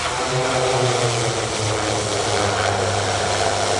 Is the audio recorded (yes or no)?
yes